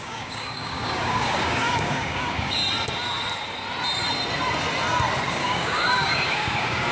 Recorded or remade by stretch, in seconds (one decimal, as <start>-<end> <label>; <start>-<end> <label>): 0.0-2.6 remade; 2.6-5.3 recorded; 5.3-6.9 remade